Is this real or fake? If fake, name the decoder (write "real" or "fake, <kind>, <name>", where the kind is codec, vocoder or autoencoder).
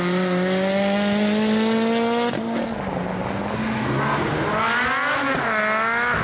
real